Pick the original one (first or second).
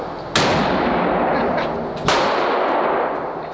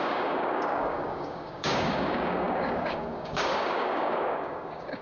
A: first